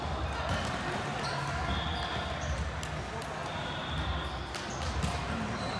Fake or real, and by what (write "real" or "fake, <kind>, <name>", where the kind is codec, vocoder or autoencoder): real